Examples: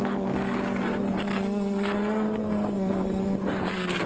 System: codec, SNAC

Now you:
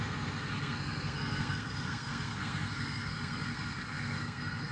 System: codec, SNAC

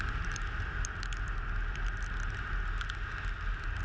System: none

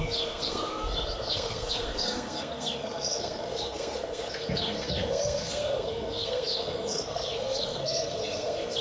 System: codec, SNAC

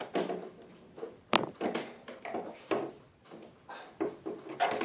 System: none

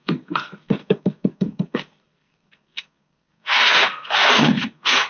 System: codec, SNAC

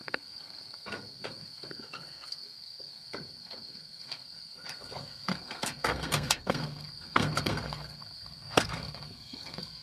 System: codec, SNAC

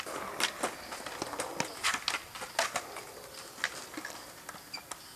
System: none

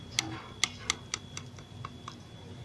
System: none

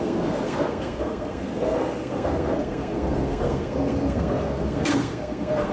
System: codec, SNAC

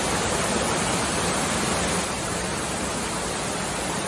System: none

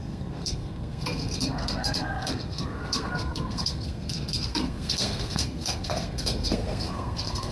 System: codec, SNAC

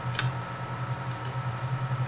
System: none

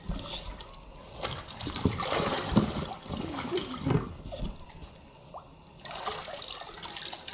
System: none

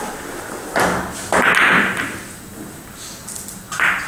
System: none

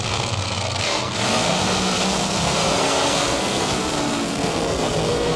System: codec, SNAC